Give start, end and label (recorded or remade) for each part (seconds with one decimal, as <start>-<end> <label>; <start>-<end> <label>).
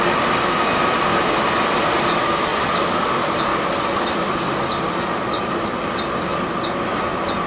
0.0-7.5 recorded